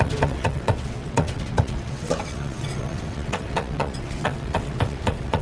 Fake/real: fake